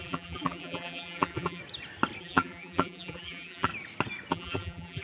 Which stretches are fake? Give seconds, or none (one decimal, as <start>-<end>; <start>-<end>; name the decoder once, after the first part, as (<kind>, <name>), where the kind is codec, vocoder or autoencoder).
0.0-1.6 (vocoder, BigVGAN v2); 2.2-3.7; 4.3-5.0